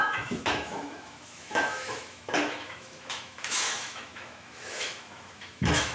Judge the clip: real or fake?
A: fake